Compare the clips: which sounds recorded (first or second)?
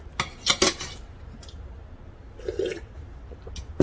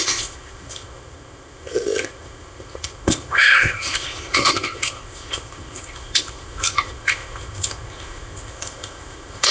first